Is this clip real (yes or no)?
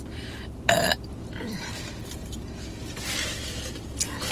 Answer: no